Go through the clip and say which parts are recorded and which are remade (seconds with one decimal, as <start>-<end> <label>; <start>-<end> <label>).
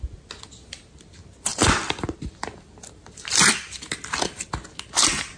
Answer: 0.0-1.5 recorded; 1.5-4.7 remade; 4.7-5.4 recorded